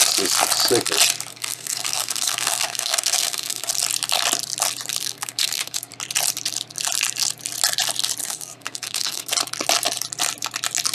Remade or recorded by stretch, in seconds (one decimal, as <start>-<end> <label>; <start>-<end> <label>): 0.0-1.3 recorded; 1.3-3.7 remade; 3.7-5.0 recorded; 5.0-5.9 remade; 5.9-8.2 recorded; 8.2-9.3 remade; 9.3-10.9 recorded